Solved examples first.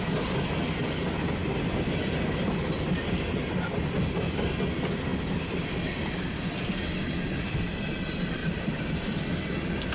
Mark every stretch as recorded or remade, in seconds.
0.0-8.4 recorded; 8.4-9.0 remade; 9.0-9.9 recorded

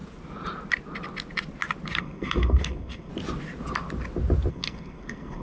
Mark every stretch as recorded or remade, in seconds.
0.0-2.0 recorded; 2.0-3.1 remade; 3.1-4.5 recorded; 4.5-5.4 remade

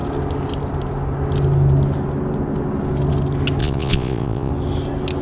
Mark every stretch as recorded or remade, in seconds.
0.0-3.6 recorded; 3.6-4.5 remade; 4.5-5.2 recorded